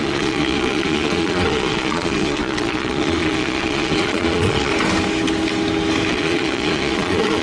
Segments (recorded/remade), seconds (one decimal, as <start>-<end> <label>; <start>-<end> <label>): 0.0-4.7 remade; 4.7-6.1 recorded; 6.1-7.4 remade